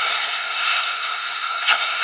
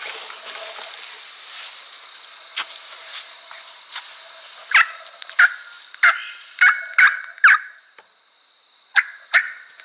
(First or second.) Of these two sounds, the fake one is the first